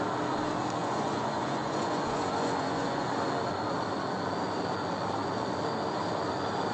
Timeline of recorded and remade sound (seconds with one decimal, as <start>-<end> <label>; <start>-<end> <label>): 0.0-0.8 recorded; 0.8-3.1 remade; 3.1-6.7 recorded